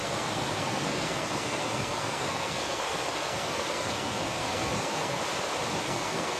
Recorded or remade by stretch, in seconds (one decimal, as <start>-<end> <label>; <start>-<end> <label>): 0.0-5.2 remade; 5.2-5.8 recorded; 5.8-6.4 remade